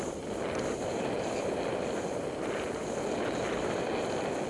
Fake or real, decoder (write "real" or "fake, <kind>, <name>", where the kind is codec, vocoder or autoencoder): real